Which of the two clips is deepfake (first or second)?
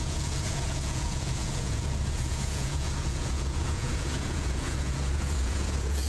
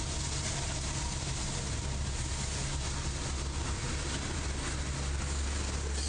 first